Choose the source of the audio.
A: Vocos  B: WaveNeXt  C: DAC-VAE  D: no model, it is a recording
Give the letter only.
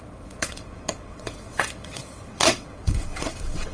B